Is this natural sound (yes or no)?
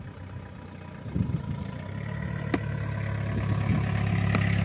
yes